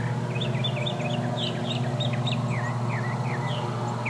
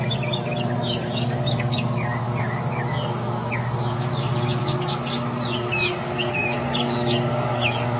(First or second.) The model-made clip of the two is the second